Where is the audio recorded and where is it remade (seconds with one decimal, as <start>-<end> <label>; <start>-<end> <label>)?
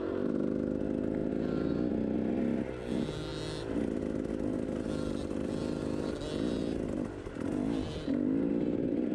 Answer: 0.0-9.1 recorded